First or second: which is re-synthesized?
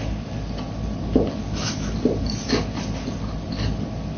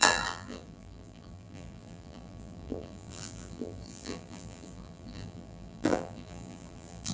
second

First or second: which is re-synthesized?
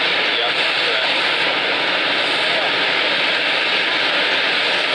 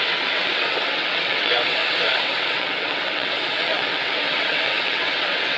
second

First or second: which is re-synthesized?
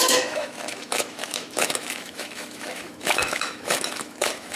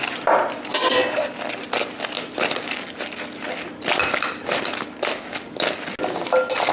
first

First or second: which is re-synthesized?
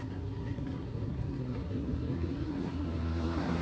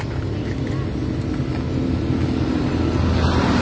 first